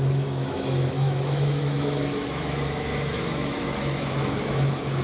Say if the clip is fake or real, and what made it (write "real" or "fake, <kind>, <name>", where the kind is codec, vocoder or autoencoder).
fake, autoencoder, DAC-VAE